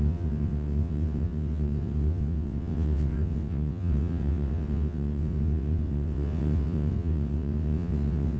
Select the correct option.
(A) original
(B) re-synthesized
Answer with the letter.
B